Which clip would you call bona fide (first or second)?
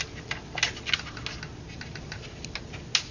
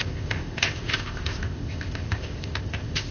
first